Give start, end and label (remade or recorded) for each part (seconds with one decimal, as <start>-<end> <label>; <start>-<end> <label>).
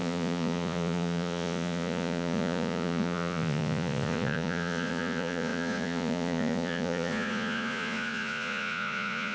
0.0-9.3 remade